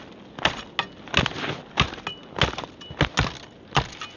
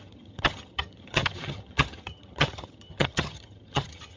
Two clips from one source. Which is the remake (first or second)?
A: second